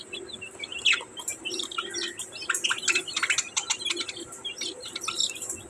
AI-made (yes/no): no